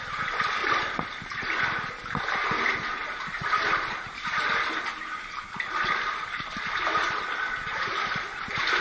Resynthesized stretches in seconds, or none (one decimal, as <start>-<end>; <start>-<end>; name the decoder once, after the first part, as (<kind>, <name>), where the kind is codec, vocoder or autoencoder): 0.6-1.4 (vocoder, BigVGAN v2)